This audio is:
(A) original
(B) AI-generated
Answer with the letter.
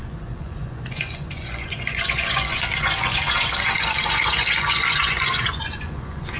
B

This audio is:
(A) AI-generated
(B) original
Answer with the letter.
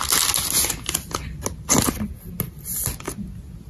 B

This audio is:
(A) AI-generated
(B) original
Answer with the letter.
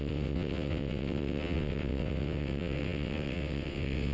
A